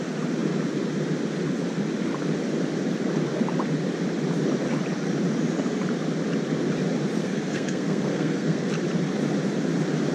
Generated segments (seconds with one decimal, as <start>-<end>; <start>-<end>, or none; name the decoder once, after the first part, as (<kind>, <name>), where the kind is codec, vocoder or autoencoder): 7.2-8.7 (codec, SNAC)